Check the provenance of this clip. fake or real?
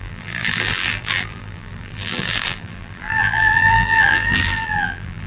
fake